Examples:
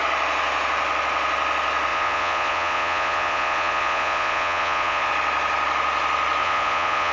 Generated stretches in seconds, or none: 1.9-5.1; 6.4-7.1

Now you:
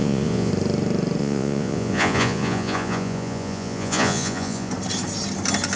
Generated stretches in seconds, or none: 0.0-0.5; 1.2-4.7

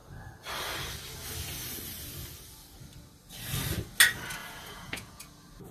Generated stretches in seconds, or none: 4.4-5.2

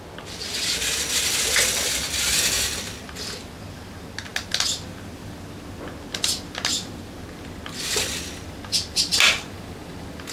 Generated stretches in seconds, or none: none